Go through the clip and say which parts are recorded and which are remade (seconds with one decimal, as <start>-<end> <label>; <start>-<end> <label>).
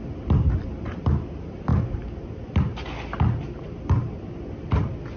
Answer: 0.0-5.2 recorded